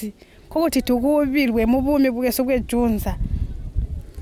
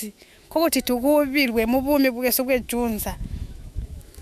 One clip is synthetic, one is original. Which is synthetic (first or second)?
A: second